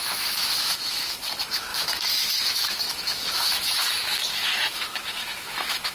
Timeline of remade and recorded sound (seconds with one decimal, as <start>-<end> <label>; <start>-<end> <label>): 0.0-5.9 remade